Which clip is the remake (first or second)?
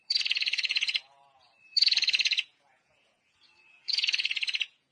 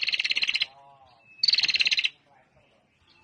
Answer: first